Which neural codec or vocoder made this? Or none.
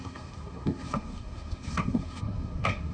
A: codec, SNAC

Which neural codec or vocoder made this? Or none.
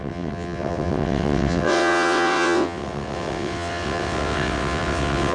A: vocoder, WaveNeXt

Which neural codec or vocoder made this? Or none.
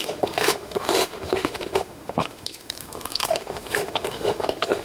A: autoencoder, DAC-VAE